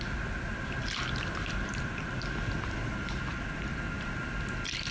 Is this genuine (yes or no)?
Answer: no